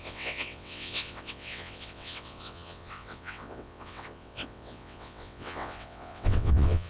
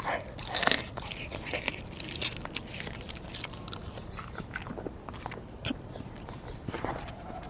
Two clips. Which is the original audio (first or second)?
second